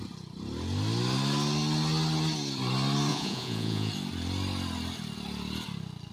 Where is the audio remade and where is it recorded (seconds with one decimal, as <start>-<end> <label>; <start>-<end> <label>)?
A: 0.0-3.1 recorded; 3.1-3.9 remade; 3.9-6.1 recorded